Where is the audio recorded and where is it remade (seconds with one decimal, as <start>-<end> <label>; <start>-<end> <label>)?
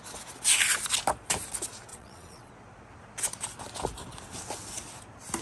0.0-1.9 recorded; 1.9-2.5 remade; 2.5-5.4 recorded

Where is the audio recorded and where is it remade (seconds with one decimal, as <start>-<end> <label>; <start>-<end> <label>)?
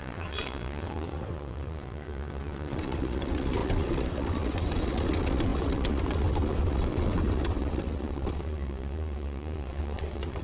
0.0-10.4 remade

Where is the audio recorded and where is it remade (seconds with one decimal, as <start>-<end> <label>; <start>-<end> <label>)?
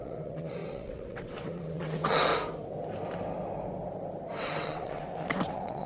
0.0-2.3 remade; 2.3-4.4 recorded; 4.4-5.9 remade